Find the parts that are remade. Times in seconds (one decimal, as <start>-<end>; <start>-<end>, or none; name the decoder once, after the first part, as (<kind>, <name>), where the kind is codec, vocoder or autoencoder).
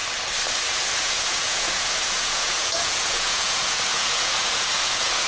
0.7-5.3 (vocoder, Vocos)